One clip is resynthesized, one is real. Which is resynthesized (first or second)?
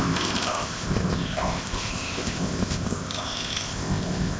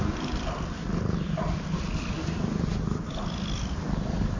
first